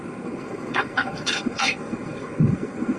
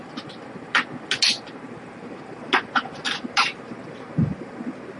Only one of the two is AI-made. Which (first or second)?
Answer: first